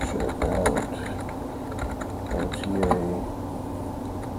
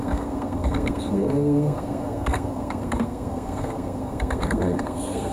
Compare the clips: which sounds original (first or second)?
first